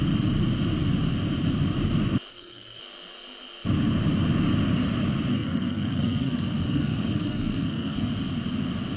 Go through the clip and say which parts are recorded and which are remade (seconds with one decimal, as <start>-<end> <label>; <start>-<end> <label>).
0.0-2.3 recorded; 2.3-2.8 remade; 2.8-5.3 recorded; 5.3-8.1 remade; 8.1-9.0 recorded